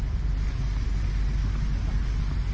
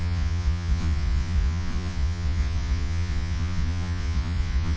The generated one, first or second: second